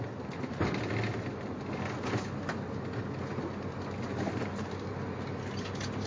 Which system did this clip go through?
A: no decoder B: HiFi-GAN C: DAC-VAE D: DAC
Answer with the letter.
A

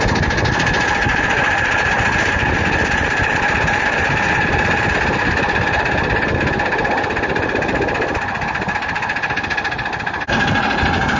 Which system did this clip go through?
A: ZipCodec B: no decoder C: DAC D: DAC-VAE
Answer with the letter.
B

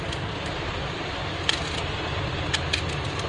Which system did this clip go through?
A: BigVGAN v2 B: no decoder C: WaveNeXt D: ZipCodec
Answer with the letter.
B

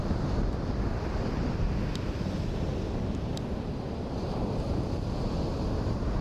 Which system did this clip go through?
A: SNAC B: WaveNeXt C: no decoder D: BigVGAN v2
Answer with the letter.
C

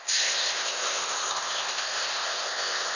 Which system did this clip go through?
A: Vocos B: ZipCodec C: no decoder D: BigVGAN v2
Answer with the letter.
B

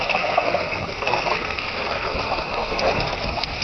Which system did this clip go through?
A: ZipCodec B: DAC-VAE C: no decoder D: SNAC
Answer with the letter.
D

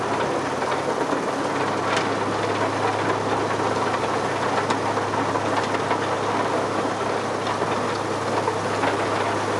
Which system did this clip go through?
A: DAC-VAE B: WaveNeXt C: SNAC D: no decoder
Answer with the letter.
D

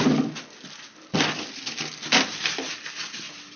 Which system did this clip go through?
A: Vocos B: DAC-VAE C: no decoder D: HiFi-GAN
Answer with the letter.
C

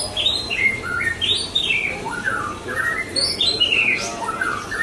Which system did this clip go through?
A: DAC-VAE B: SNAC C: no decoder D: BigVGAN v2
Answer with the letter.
D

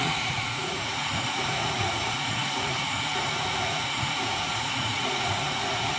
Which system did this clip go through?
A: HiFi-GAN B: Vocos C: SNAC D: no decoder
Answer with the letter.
B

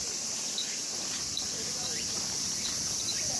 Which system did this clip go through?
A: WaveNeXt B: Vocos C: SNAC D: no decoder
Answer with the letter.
D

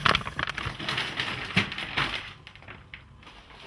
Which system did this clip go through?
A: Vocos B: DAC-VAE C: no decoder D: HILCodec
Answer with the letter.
C